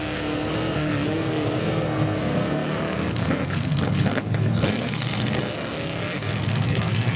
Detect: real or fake fake